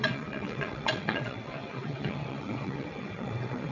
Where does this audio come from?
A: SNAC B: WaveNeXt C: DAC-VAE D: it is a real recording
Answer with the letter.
B